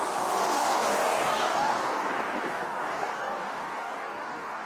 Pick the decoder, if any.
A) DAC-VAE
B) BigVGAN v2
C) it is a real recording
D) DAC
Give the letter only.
D